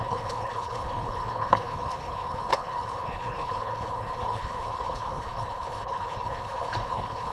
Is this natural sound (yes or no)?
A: no